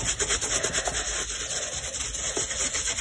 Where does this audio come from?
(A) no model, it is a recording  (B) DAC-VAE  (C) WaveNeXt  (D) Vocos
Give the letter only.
A